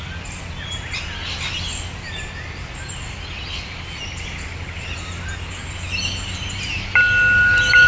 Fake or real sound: real